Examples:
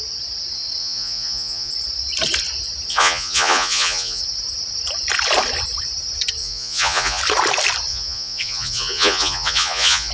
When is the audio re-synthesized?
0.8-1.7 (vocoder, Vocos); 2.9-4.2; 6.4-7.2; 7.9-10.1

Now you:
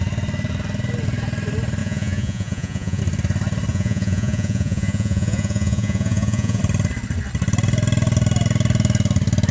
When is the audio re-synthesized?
1.8-3.0 (vocoder, Vocos); 3.7-6.6

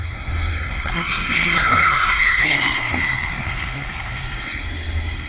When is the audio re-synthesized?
0.0-5.3 (codec, SNAC)

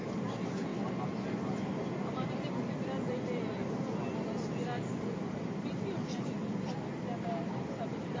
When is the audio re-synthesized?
0.0-0.7 (vocoder, BigVGAN v2); 5.2-6.4; 7.5-8.2